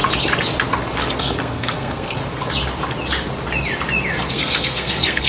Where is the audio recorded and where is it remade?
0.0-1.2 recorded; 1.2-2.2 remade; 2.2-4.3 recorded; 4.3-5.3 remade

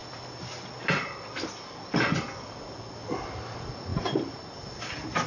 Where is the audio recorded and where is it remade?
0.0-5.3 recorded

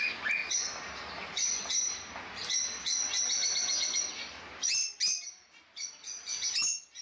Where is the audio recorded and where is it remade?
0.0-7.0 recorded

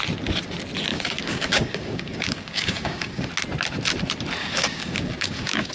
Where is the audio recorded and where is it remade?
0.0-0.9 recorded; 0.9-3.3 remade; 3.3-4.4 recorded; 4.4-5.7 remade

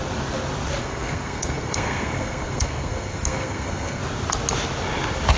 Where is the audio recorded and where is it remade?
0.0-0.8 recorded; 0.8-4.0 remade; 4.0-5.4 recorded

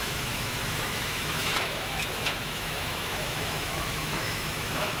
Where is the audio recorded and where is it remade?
0.0-5.0 remade

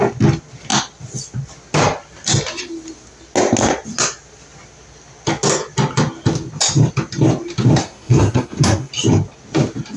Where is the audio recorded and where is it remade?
0.0-7.8 recorded; 7.8-8.9 remade; 8.9-10.0 recorded